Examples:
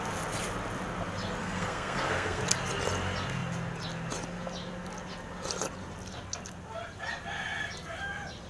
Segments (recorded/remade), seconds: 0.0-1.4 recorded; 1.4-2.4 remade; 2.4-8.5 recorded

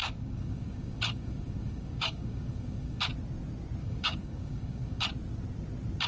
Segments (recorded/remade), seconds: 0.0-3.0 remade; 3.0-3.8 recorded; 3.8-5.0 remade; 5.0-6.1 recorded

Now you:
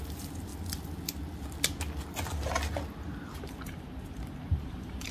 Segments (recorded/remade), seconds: 0.0-0.5 remade; 0.5-3.0 recorded; 3.0-5.1 remade

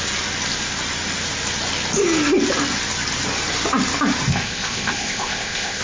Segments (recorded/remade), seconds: 0.0-4.3 recorded; 4.3-5.8 remade

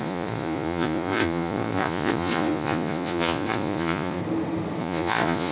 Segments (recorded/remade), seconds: 0.0-4.2 remade; 4.2-4.8 recorded; 4.8-5.5 remade

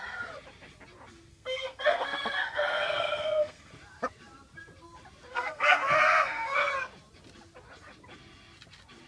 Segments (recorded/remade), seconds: 0.0-1.3 recorded; 1.3-3.7 remade; 3.7-5.3 recorded; 5.3-6.7 remade; 6.7-9.1 recorded

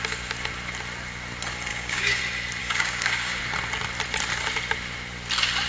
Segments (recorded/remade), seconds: 0.0-1.7 recorded; 1.7-2.2 remade; 2.2-2.6 recorded; 2.6-3.4 remade; 3.4-5.7 recorded

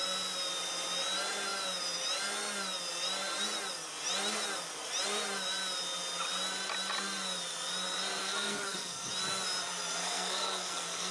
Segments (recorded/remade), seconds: 0.0-8.2 recorded; 8.2-9.1 remade; 9.1-10.0 recorded; 10.0-11.1 remade